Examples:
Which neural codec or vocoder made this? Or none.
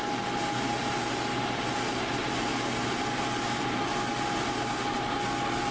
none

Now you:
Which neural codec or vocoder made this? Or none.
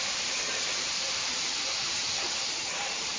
vocoder, BigVGAN v2